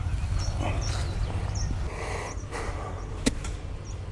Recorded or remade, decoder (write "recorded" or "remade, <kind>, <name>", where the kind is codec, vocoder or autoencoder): recorded